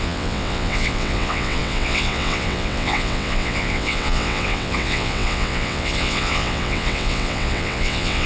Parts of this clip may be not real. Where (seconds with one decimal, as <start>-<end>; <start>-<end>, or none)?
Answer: 0.0-8.3